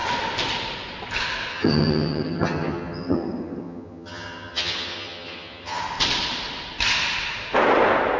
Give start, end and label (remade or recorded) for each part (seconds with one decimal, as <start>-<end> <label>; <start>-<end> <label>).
0.0-1.5 recorded; 1.5-5.8 remade; 5.8-8.2 recorded